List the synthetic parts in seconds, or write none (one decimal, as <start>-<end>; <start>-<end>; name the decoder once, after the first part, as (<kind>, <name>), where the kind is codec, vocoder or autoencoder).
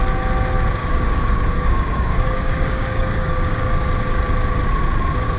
0.8-3.9 (codec, DAC)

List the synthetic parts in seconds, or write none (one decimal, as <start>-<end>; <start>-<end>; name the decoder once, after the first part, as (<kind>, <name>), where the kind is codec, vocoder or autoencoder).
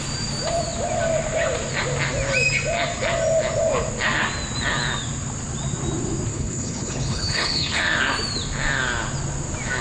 6.3-7.8 (codec, HILCodec)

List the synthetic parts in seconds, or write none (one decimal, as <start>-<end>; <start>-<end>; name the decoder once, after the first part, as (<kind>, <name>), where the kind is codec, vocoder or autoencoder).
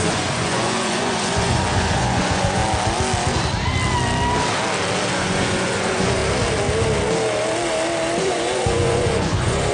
0.0-2.6 (vocoder, Vocos); 5.1-6.2; 8.2-9.7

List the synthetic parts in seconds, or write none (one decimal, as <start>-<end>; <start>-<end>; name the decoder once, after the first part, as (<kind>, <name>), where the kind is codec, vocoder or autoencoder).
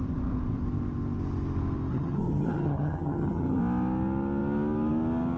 1.9-3.6 (vocoder, HiFi-GAN)